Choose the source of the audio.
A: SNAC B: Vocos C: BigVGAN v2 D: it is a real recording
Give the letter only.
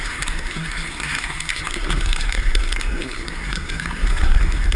A